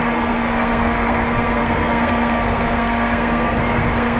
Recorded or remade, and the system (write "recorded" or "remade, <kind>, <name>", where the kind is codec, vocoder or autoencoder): remade, codec, SNAC